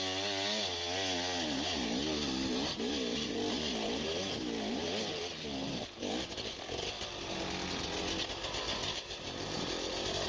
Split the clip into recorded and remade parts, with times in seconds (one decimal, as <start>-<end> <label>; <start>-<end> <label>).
0.0-8.8 recorded; 8.8-9.7 remade; 9.7-10.3 recorded